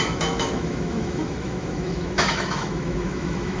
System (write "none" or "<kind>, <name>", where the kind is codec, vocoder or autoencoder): autoencoder, DAC-VAE